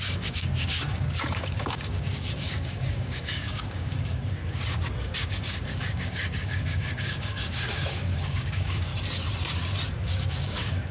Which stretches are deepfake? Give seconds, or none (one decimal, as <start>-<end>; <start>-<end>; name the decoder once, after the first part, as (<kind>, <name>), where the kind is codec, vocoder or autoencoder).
0.0-8.9 (codec, DAC); 9.9-10.9